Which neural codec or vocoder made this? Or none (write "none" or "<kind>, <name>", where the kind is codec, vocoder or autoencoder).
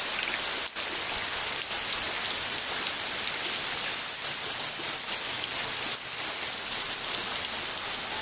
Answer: none